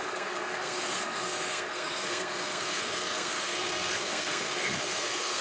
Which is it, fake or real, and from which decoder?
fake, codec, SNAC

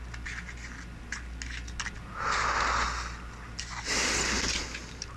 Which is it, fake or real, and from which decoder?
real